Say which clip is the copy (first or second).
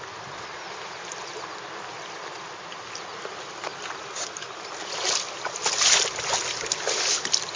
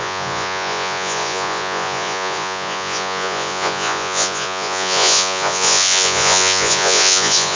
second